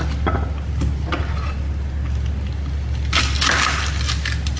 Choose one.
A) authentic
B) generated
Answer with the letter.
A